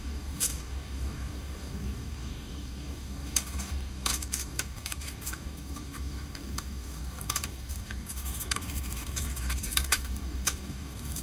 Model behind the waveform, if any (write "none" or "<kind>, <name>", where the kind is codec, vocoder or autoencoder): codec, DAC